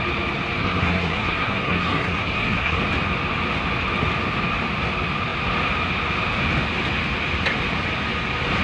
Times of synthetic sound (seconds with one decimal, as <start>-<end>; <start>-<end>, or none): 0.6-2.8

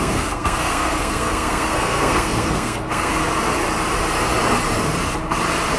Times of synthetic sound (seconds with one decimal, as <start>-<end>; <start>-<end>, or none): 0.0-3.1

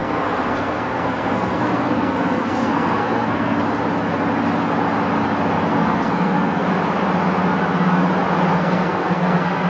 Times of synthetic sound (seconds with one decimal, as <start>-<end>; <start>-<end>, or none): 0.0-3.6; 5.7-6.7; 8.5-9.7

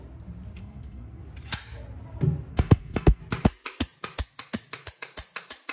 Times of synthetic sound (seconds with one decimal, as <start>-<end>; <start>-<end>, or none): 0.6-1.2; 2.5-3.2